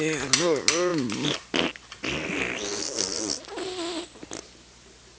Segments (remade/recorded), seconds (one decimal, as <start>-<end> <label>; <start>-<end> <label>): 0.0-5.2 recorded